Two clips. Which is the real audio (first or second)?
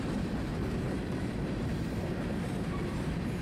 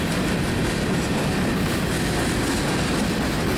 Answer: second